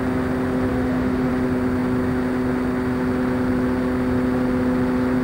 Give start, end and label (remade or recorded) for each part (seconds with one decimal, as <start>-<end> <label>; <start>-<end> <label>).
0.0-0.7 recorded; 0.7-1.3 remade; 1.3-5.2 recorded